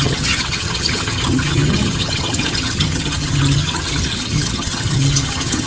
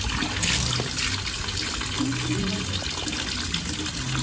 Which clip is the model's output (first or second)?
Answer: first